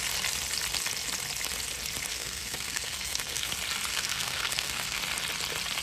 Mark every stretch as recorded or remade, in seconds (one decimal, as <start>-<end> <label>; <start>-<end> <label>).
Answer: 0.0-2.1 recorded; 2.1-3.5 remade; 3.5-3.9 recorded; 3.9-5.0 remade; 5.0-5.8 recorded